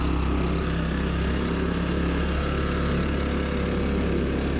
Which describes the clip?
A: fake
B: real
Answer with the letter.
B